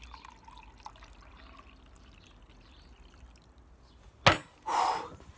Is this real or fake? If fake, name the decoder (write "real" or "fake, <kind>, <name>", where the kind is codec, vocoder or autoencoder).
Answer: real